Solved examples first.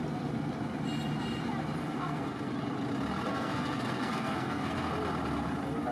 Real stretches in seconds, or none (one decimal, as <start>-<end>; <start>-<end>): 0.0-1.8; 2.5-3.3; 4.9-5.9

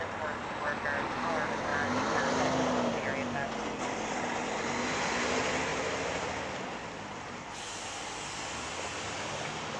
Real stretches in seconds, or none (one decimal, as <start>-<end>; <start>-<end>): 0.0-9.8

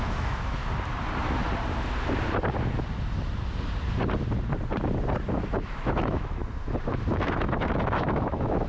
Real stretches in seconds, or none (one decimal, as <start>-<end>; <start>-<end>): 0.6-5.7; 6.4-7.1

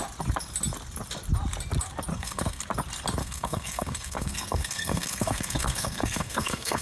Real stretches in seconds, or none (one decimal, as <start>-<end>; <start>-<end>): 0.0-2.1; 2.6-3.2

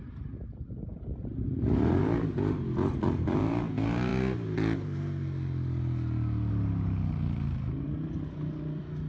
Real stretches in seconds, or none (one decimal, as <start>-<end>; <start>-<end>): 0.0-9.1